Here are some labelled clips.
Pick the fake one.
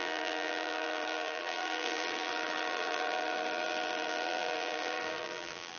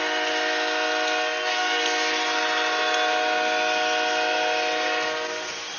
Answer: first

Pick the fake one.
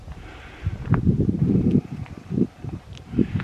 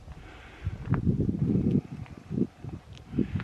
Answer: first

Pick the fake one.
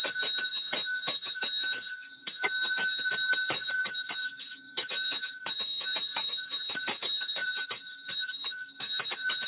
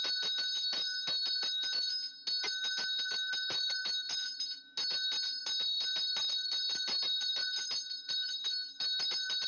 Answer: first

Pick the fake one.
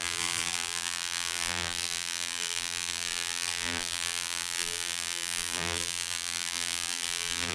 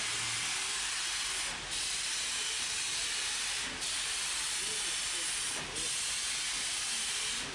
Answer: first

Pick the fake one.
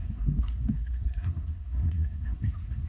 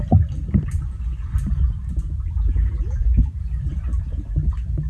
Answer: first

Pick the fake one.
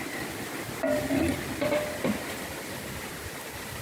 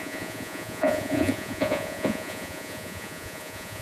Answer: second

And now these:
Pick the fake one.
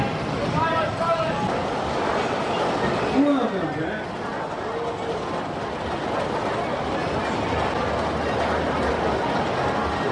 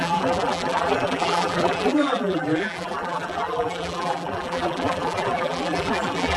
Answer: second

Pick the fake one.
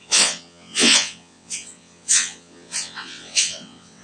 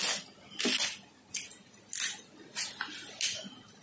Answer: first